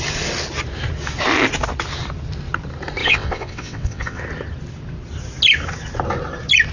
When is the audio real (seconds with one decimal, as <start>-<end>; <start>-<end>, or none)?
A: 0.0-3.0; 4.2-6.7